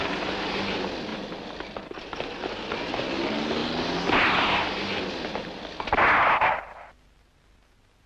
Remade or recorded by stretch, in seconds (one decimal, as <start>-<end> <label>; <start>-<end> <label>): 0.0-8.1 recorded